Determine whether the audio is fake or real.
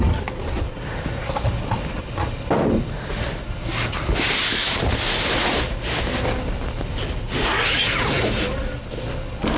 real